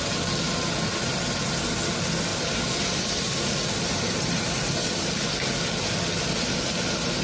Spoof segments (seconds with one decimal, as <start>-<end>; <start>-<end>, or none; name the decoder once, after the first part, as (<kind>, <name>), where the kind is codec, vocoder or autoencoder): 2.3-5.1 (vocoder, BigVGAN v2)